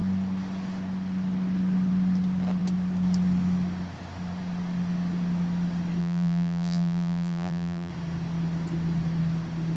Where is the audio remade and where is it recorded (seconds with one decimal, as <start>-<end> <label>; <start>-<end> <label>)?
0.0-6.0 recorded; 6.0-7.9 remade; 7.9-9.8 recorded